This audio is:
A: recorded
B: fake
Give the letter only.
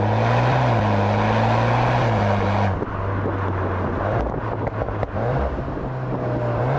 A